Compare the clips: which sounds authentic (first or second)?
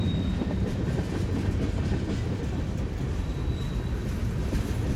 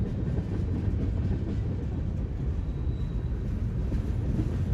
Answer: second